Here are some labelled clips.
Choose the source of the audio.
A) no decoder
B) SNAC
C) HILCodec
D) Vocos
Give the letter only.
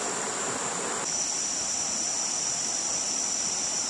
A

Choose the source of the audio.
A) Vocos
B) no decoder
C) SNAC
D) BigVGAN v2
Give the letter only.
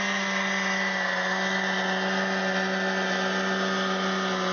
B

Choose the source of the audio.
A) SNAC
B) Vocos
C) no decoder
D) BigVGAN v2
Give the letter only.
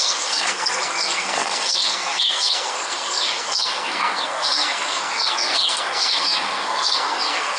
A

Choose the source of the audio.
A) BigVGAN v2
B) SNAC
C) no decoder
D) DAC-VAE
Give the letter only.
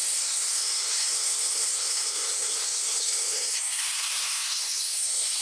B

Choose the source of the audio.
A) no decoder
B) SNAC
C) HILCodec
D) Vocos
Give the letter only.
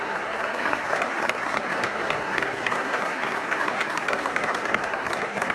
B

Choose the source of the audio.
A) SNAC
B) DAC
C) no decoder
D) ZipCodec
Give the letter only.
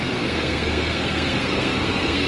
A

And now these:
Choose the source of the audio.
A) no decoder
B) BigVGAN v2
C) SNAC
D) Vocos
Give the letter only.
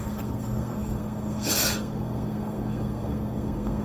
C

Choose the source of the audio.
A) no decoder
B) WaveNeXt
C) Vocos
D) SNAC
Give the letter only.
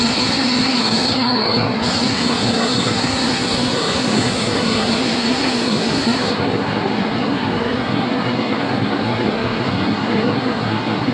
D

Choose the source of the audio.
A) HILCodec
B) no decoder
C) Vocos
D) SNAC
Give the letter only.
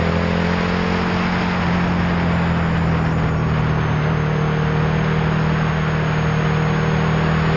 B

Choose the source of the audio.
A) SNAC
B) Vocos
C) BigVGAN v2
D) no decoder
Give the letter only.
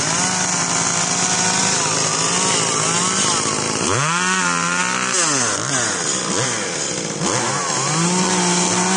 D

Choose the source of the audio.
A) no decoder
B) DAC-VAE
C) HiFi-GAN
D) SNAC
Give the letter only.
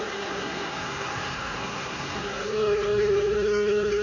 D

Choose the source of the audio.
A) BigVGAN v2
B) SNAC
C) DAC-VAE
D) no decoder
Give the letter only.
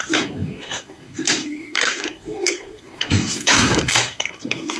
B